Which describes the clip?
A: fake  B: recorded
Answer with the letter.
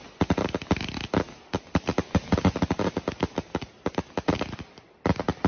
B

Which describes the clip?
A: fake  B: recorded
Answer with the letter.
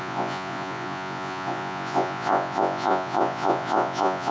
A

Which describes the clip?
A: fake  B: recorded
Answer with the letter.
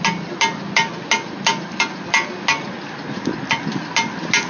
B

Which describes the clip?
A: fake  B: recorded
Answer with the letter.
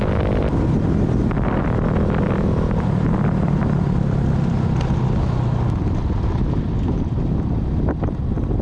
B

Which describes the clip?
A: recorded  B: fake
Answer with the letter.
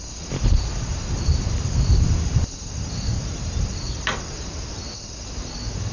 A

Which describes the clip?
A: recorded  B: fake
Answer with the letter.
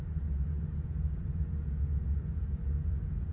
B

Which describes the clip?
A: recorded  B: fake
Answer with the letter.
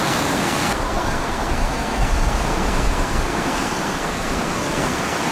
B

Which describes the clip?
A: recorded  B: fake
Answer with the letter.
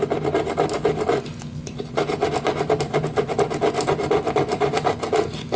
A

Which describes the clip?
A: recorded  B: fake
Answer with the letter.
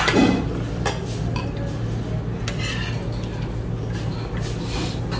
A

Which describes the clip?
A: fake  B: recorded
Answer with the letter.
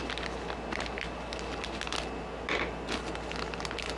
B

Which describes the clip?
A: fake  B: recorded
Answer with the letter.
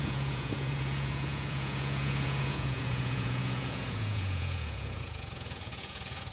A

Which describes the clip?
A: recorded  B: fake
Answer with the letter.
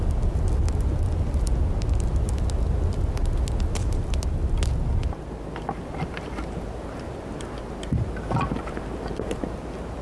A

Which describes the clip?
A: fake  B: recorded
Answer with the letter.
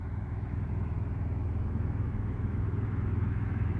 A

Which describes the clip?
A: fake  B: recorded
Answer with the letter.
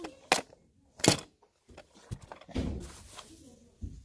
B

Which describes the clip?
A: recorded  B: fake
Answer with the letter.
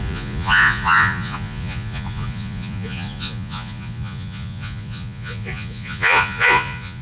B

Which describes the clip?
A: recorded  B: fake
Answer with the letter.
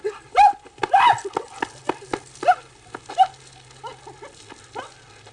A